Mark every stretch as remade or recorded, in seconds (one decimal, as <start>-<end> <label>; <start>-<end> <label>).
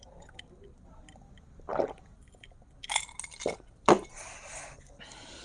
0.0-5.4 recorded